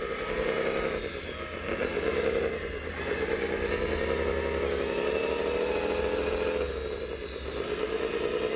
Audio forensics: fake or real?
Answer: real